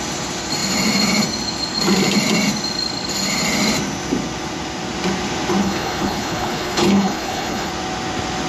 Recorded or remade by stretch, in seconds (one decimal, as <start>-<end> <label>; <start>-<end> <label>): 0.0-5.6 recorded; 5.6-7.7 remade; 7.7-8.5 recorded